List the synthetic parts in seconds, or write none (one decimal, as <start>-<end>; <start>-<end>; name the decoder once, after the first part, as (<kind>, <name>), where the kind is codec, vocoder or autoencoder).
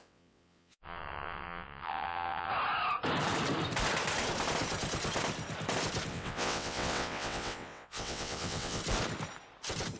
0.0-2.5 (vocoder, WaveNeXt); 6.1-8.8